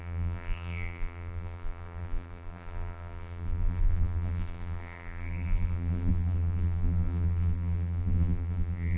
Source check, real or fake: fake